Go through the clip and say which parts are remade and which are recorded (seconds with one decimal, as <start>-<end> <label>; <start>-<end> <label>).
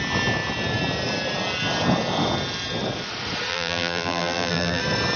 0.0-3.5 recorded; 3.5-4.8 remade; 4.8-5.2 recorded